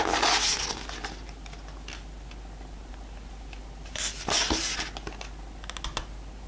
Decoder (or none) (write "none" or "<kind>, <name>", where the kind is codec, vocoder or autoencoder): none